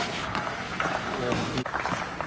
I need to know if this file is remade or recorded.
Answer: recorded